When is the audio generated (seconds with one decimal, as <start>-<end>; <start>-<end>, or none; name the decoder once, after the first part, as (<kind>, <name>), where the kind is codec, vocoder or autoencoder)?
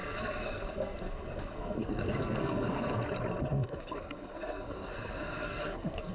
0.0-3.0 (codec, SNAC); 3.5-6.1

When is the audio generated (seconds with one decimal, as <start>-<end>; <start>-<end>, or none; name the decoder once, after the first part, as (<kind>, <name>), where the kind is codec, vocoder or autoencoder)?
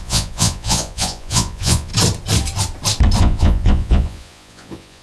0.0-1.9 (vocoder, Vocos); 3.2-5.0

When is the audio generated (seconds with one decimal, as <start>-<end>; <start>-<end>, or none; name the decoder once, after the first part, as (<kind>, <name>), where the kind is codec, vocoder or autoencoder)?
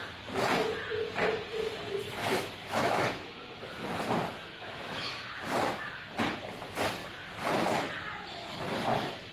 2.2-3.6 (autoencoder, DAC-VAE); 4.4-5.3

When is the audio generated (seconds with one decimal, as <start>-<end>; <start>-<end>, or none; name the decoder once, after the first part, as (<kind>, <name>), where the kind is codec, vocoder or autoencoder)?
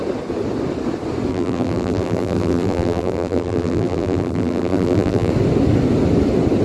1.3-5.3 (vocoder, BigVGAN v2)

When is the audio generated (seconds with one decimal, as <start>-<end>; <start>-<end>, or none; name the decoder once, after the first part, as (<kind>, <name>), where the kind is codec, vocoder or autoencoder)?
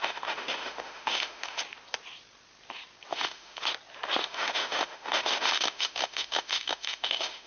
0.0-1.6 (autoencoder, DAC-VAE); 3.1-3.6; 4.2-7.5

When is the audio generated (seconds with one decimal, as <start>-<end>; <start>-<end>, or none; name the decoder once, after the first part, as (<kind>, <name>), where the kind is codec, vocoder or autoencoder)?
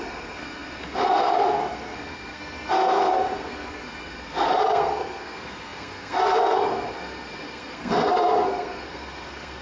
0.0-9.6 (codec, SNAC)